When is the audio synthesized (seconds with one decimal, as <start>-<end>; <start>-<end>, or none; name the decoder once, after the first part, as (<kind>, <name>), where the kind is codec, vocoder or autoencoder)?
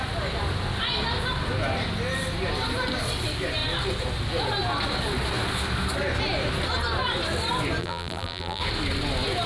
7.8-8.6 (vocoder, BigVGAN v2)